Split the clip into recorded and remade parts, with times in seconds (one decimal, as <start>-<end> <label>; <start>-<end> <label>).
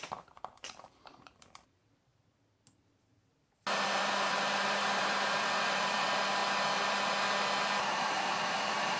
0.0-2.1 remade; 2.1-4.0 recorded; 4.0-6.4 remade; 6.4-8.1 recorded; 8.1-9.0 remade